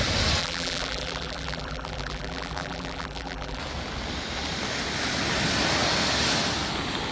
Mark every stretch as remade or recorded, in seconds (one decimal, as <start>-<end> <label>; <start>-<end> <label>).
0.0-0.4 recorded; 0.4-3.6 remade; 3.6-7.1 recorded